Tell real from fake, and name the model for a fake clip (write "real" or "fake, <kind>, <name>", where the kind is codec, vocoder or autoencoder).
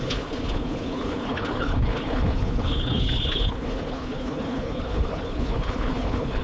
fake, codec, HILCodec